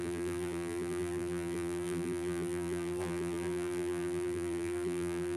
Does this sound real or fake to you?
fake